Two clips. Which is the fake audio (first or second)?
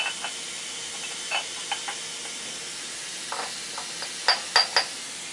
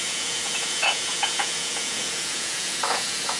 second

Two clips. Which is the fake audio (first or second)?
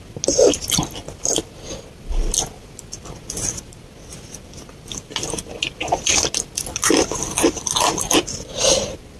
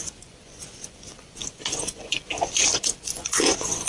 second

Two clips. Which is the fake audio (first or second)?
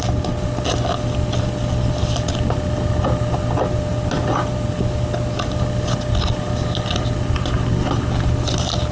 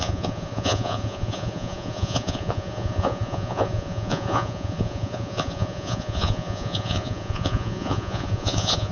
second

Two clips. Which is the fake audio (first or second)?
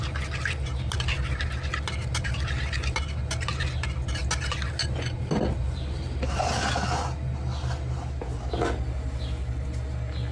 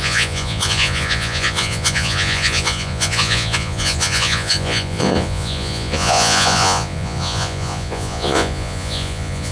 second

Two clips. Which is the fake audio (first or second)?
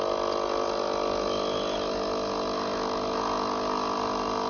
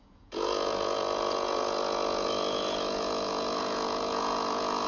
second